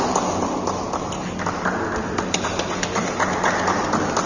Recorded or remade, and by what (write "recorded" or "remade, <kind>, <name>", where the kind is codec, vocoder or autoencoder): recorded